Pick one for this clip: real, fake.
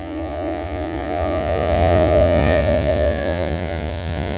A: fake